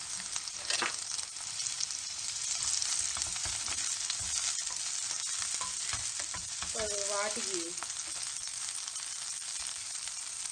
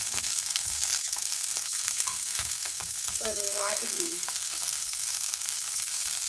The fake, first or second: second